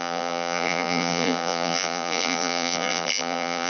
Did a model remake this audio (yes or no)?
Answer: yes